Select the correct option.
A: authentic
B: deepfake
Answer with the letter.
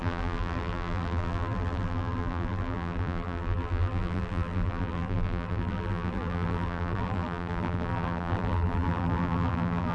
B